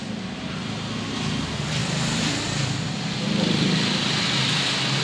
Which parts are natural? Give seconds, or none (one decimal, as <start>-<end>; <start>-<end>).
0.0-1.8; 4.6-5.0